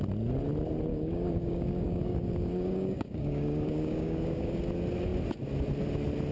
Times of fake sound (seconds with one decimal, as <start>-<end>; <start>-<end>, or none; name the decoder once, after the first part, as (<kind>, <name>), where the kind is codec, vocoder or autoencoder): 0.9-4.6 (codec, DAC)